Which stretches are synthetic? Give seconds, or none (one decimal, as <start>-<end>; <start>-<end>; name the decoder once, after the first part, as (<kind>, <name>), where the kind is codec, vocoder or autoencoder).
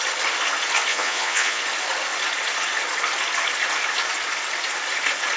0.9-1.6 (vocoder, Vocos)